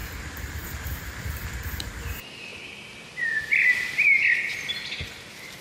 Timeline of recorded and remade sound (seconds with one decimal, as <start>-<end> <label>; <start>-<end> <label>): 0.0-0.5 remade; 0.5-2.5 recorded; 2.5-3.6 remade; 3.6-5.6 recorded